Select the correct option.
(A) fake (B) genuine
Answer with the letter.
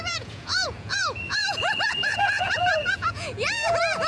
A